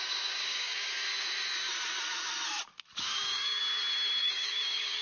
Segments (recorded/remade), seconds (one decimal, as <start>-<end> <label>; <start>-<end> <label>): 0.0-1.1 remade; 1.1-3.0 recorded; 3.0-3.6 remade; 3.6-4.2 recorded; 4.2-5.0 remade

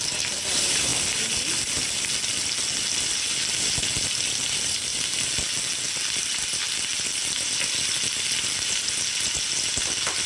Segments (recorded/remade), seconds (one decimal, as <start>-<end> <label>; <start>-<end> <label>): 0.0-0.9 remade; 0.9-4.3 recorded; 4.3-4.9 remade; 4.9-10.3 recorded

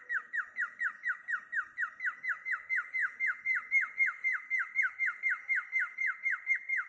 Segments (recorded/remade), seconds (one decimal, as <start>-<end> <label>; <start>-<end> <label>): 0.0-6.9 recorded

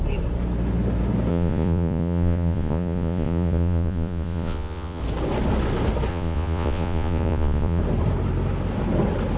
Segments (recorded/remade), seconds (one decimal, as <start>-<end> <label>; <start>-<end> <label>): 0.0-1.3 recorded; 1.3-5.0 remade; 5.0-6.1 recorded; 6.1-7.8 remade; 7.8-9.4 recorded

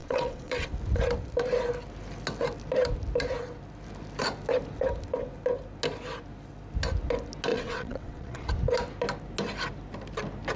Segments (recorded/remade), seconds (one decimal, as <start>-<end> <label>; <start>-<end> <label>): 0.0-0.7 remade; 0.7-7.5 recorded; 7.5-8.5 remade; 8.5-10.6 recorded

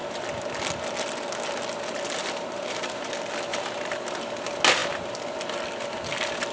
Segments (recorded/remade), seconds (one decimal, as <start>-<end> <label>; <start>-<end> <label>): 0.0-2.2 recorded; 2.2-3.1 remade; 3.1-3.5 recorded; 3.5-4.1 remade; 4.1-6.5 recorded